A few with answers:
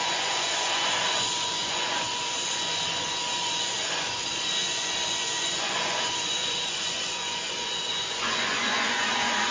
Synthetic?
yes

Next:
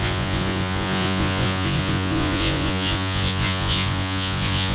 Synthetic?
yes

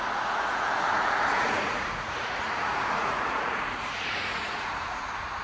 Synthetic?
yes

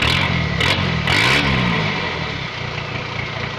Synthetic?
no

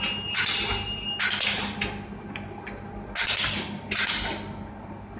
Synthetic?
no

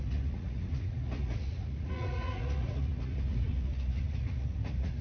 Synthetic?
yes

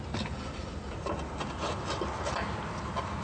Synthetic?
no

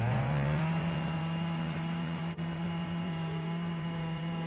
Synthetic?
yes